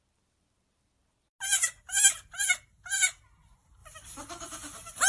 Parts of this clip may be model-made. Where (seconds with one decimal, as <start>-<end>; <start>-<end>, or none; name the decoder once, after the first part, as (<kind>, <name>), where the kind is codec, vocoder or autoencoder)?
1.5-2.5 (vocoder, BigVGAN v2); 3.8-5.1